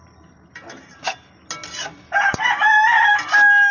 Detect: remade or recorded recorded